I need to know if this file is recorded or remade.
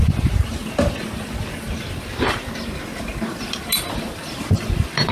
recorded